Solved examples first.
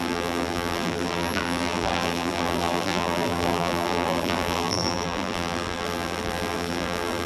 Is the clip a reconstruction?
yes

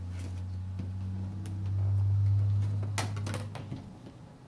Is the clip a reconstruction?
no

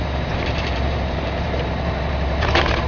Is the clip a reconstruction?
yes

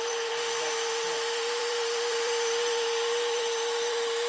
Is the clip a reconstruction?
yes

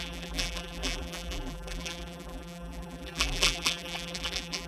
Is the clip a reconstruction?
yes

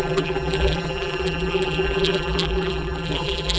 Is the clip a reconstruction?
yes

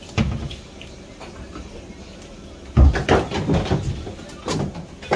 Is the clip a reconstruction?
no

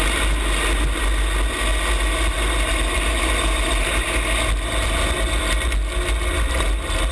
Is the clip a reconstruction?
no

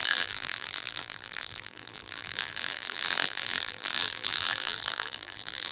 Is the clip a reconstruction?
yes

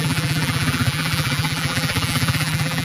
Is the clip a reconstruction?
yes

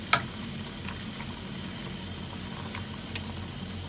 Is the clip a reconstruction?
no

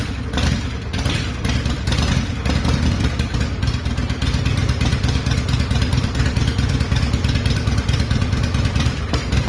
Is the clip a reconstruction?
yes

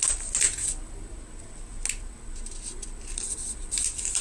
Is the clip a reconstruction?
no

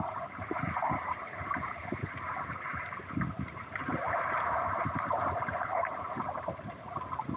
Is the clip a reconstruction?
yes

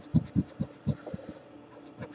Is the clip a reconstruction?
yes